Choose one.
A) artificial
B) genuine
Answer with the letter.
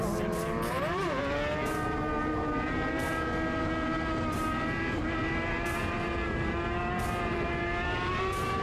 A